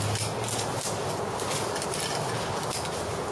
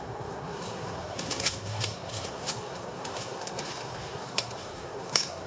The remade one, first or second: second